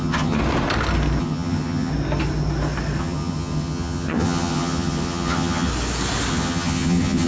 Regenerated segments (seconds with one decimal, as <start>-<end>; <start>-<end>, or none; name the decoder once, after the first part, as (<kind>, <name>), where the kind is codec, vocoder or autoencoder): 0.0-0.4 (vocoder, HiFi-GAN); 1.2-1.9; 3.0-5.7; 6.3-7.3